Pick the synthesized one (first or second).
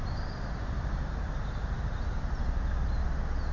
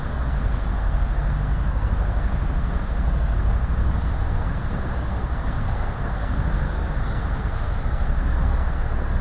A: second